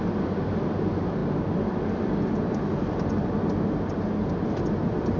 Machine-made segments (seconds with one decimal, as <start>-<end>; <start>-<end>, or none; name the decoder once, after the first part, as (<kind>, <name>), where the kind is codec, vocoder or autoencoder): none